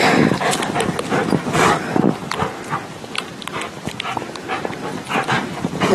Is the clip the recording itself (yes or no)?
yes